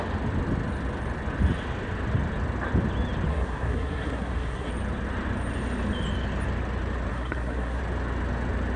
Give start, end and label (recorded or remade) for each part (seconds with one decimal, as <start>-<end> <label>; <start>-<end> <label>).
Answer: 0.0-3.3 recorded; 3.3-4.7 remade; 4.7-7.1 recorded; 7.1-7.8 remade; 7.8-8.8 recorded